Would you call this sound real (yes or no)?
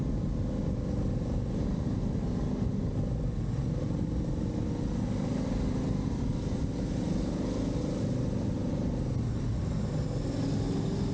yes